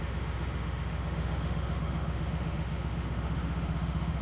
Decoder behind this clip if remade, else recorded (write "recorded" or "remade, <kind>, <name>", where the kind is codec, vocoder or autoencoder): remade, autoencoder, DAC-VAE